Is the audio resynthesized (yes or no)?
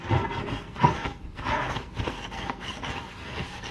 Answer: yes